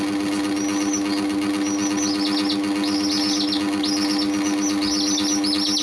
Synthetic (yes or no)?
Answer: no